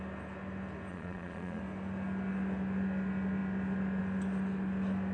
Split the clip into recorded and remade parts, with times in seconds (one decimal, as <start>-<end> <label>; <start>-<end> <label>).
0.0-0.9 recorded; 0.9-1.6 remade; 1.6-5.1 recorded